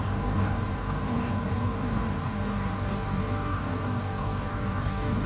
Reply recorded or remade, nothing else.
remade